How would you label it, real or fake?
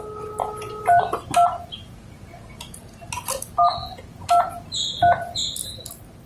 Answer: real